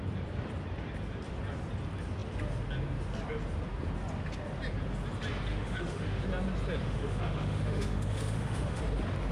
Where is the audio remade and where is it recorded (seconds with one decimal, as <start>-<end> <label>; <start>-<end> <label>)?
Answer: 0.0-5.5 recorded; 5.5-6.2 remade; 6.2-6.8 recorded; 6.8-8.8 remade; 8.8-9.3 recorded